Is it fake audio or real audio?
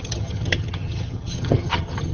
fake